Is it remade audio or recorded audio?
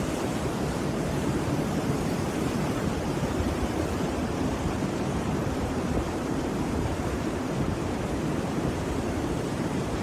remade